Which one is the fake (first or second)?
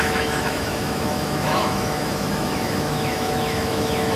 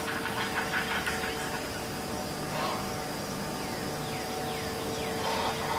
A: first